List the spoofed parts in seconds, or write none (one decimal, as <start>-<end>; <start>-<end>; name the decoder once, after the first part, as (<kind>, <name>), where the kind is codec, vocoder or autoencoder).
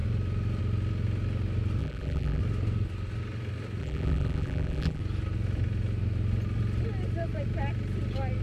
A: 1.8-2.4 (vocoder, BigVGAN v2); 3.8-5.0